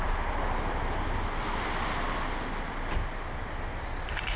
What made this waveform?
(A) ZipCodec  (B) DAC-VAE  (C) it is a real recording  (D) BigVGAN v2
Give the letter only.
C